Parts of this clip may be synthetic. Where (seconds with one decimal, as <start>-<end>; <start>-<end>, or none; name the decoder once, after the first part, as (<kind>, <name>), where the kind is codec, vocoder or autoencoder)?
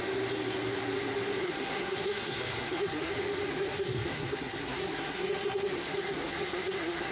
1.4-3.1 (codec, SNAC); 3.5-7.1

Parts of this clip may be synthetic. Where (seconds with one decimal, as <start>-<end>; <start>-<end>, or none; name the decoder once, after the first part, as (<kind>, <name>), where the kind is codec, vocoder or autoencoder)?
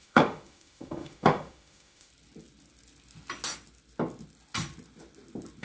0.0-2.1 (autoencoder, DAC-VAE)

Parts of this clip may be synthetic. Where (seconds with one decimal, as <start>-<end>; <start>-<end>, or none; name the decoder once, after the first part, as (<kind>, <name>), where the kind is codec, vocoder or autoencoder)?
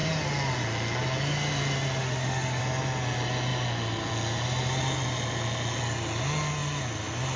2.0-2.6 (autoencoder, DAC-VAE)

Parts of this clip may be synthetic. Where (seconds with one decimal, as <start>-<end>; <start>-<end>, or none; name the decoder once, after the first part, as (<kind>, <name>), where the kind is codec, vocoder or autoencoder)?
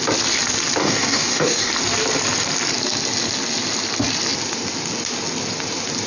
0.8-1.7 (codec, DAC)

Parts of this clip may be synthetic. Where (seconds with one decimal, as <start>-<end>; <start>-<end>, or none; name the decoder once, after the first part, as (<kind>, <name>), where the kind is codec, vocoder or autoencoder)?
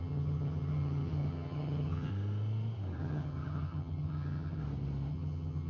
0.0-2.1 (vocoder, HiFi-GAN); 3.0-4.6; 5.1-5.7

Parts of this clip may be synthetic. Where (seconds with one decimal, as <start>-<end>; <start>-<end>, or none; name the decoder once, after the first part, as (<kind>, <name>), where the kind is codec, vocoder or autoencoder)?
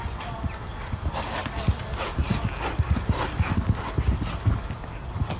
none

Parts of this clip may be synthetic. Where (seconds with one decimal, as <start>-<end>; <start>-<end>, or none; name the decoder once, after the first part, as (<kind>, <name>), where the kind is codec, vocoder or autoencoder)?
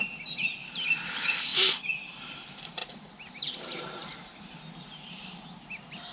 0.0-1.5 (vocoder, BigVGAN v2); 2.2-6.1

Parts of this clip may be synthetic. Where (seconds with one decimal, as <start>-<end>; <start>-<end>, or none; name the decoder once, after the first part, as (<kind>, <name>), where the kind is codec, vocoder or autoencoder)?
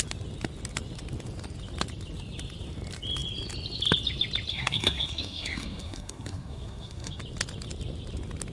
4.5-7.2 (codec, SNAC)